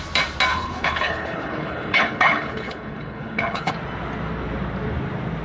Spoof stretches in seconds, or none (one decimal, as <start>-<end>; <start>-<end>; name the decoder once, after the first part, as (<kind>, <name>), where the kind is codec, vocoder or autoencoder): 0.5-3.7 (codec, HILCodec)